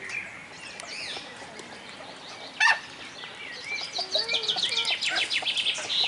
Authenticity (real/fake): real